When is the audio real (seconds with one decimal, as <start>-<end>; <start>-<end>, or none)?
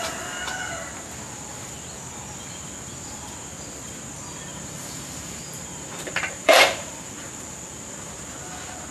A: 0.0-4.5; 8.1-8.9